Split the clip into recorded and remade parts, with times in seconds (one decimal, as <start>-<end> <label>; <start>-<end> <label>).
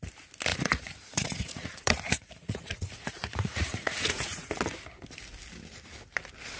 0.0-0.5 recorded; 0.5-4.5 remade; 4.5-6.6 recorded